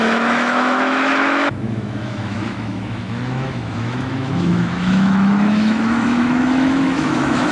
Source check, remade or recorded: remade